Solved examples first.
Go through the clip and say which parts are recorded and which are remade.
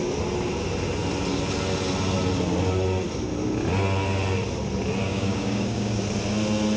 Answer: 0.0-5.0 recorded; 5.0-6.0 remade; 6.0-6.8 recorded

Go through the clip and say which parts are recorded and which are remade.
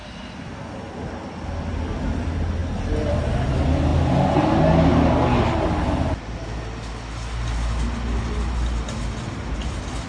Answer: 0.0-10.1 recorded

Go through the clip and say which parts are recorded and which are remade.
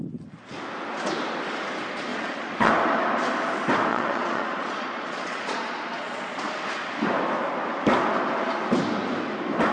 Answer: 0.0-2.1 recorded; 2.1-2.7 remade; 2.7-3.9 recorded; 3.9-6.4 remade; 6.4-9.7 recorded